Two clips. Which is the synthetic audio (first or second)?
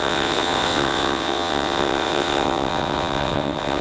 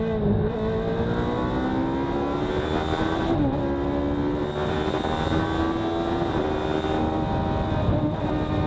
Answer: first